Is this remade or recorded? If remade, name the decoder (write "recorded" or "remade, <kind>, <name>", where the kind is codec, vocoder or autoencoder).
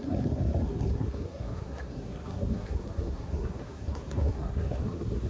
remade, codec, SNAC